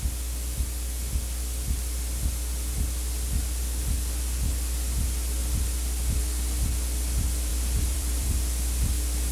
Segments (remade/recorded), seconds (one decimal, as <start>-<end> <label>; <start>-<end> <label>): 0.0-7.5 recorded; 7.5-8.3 remade; 8.3-9.3 recorded